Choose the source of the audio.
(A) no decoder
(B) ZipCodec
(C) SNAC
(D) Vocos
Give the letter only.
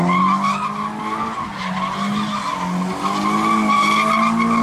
A